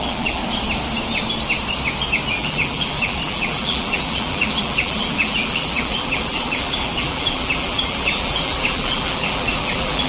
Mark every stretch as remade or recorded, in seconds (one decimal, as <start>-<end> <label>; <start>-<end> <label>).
0.0-0.4 remade; 0.4-2.3 recorded; 2.3-10.1 remade